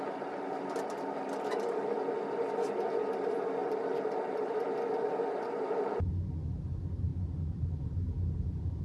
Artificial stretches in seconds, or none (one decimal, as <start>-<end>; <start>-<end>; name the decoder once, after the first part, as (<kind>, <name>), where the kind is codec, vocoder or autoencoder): none